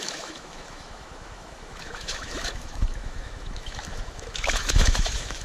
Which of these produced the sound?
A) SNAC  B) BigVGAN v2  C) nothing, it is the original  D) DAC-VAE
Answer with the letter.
D